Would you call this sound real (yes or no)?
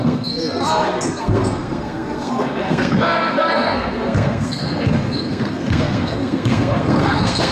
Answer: no